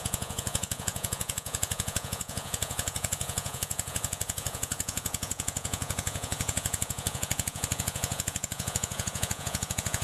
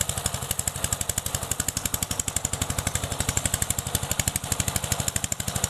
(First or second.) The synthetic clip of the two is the first